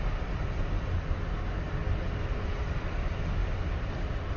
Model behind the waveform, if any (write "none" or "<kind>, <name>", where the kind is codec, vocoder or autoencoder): none